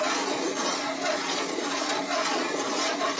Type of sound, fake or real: fake